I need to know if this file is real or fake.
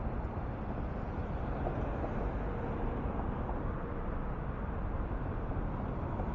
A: real